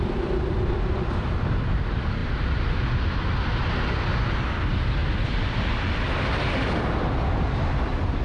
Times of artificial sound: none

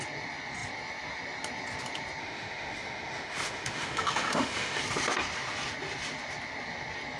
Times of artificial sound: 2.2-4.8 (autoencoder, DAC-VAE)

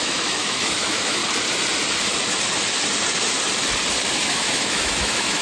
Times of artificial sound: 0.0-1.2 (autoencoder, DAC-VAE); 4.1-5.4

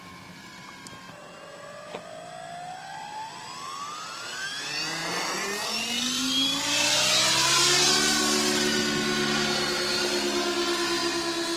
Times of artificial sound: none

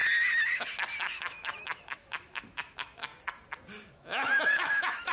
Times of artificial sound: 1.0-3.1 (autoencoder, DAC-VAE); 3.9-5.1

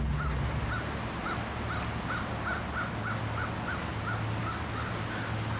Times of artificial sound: none

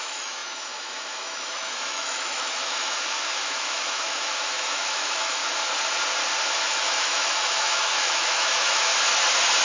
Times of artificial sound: 0.0-5.4 (autoencoder, DAC-VAE); 6.5-8.9